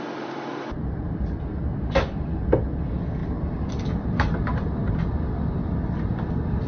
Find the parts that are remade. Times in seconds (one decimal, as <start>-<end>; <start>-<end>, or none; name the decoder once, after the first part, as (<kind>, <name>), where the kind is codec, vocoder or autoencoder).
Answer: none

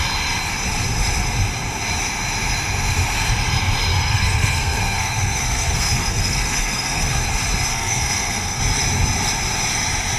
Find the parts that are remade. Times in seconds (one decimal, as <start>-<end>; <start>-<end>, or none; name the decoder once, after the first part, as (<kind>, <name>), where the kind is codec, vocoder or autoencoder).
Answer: 3.9-7.2 (codec, SNAC); 7.7-8.6

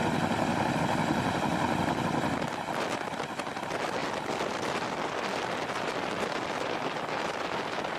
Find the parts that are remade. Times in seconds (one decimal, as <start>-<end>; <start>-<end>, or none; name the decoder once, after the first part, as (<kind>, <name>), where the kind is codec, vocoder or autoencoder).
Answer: none

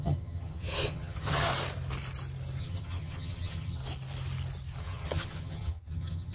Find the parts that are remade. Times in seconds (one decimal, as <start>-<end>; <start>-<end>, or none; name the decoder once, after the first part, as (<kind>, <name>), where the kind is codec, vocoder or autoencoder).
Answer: 0.0-1.5 (vocoder, HiFi-GAN); 2.6-3.8; 4.8-6.3